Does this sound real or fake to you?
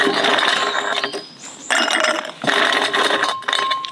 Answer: real